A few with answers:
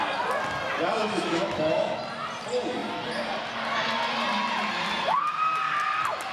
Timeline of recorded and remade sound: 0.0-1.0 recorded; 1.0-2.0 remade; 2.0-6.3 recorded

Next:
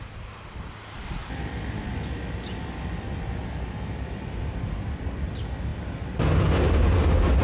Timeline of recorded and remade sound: 0.0-1.2 recorded; 1.2-1.9 remade; 1.9-3.4 recorded; 3.4-5.3 remade; 5.3-7.4 recorded

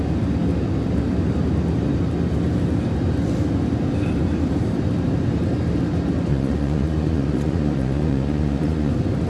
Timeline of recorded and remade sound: 0.0-6.3 recorded; 6.3-8.9 remade; 8.9-9.3 recorded

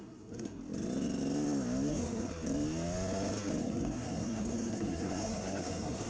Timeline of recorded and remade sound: 0.0-0.6 remade; 0.6-1.9 recorded; 1.9-2.3 remade; 2.3-3.6 recorded; 3.6-6.1 remade

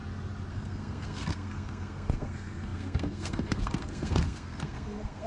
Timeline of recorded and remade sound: 0.0-0.5 recorded; 0.5-5.3 remade

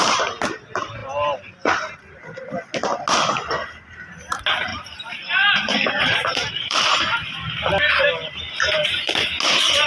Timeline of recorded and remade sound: 0.0-4.7 recorded; 4.7-7.7 remade; 7.7-8.8 recorded; 8.8-9.4 remade; 9.4-9.9 recorded

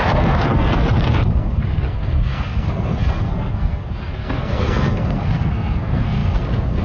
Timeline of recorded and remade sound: 0.0-6.8 remade

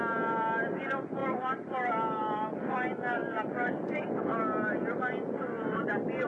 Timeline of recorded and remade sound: 0.0-6.3 recorded